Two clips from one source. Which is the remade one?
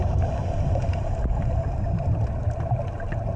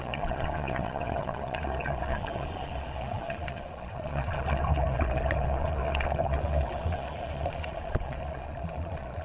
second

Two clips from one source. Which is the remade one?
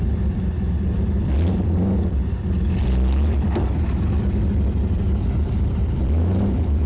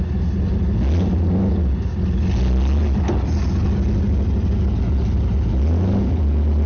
first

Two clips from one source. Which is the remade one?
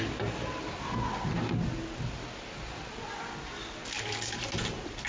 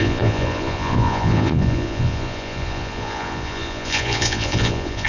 second